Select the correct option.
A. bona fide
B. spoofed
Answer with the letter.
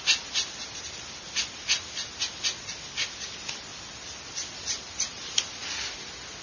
A